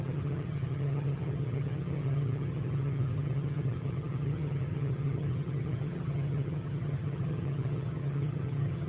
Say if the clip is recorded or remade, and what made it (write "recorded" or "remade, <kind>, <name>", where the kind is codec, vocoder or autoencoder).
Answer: remade, vocoder, HiFi-GAN